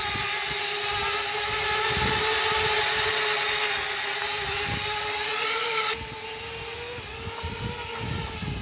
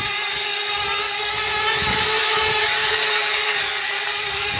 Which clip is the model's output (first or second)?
second